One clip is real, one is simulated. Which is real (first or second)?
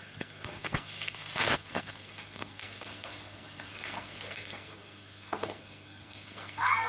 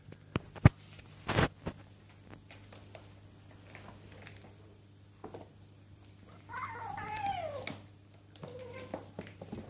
second